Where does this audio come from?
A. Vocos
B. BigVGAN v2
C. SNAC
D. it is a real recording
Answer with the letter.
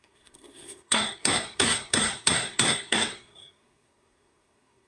C